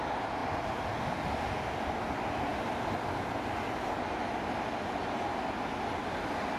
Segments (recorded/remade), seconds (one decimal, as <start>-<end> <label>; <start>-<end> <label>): 0.0-6.6 recorded